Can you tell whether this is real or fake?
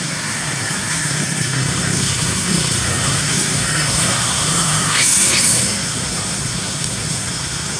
fake